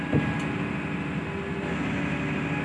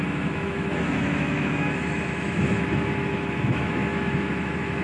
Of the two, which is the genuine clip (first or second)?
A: first